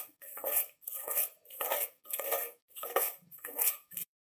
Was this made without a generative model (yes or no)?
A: no